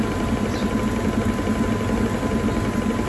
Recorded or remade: recorded